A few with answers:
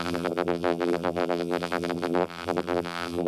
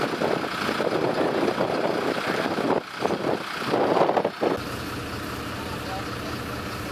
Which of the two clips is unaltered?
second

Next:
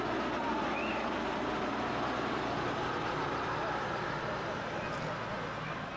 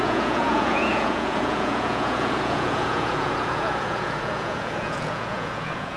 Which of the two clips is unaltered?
first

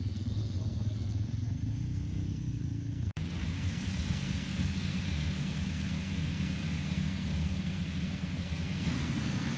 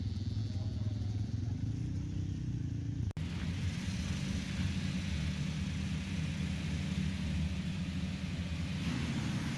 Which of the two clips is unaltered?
second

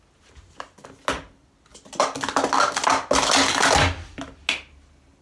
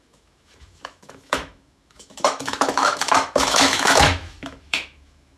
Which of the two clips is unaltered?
first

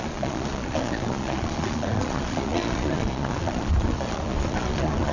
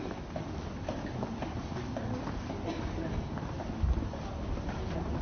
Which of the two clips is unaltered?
second